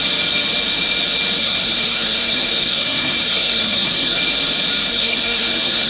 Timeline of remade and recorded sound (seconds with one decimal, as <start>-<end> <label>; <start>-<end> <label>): 0.0-1.4 recorded; 1.4-4.2 remade; 4.2-4.9 recorded; 4.9-5.9 remade